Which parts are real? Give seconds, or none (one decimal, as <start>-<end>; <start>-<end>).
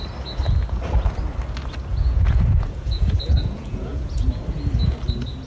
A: 0.0-1.9; 4.4-5.5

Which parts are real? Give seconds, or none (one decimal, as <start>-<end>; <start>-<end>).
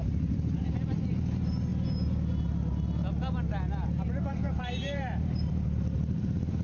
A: 1.7-4.3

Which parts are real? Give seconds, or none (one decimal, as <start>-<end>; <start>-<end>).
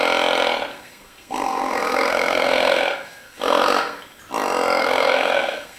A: 0.0-0.7; 4.2-4.8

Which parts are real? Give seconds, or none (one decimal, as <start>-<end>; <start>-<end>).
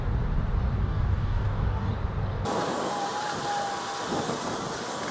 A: 0.0-0.8; 1.9-5.1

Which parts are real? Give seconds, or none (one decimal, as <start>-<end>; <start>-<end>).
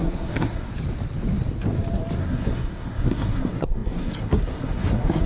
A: 0.7-2.2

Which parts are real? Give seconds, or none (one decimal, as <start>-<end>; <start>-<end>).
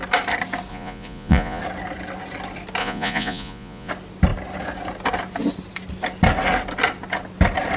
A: 0.0-0.7; 1.6-2.8; 3.9-7.8